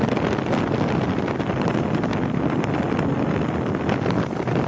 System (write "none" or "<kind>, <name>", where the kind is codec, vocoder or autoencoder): none